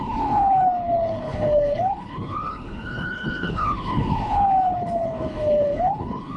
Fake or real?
fake